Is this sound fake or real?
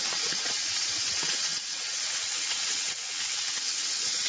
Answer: fake